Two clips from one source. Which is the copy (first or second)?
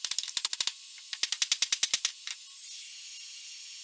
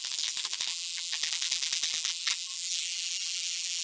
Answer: second